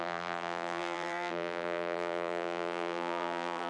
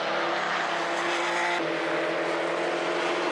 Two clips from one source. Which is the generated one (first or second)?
first